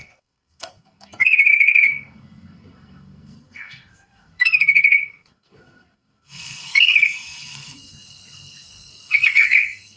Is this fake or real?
fake